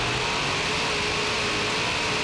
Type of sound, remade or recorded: recorded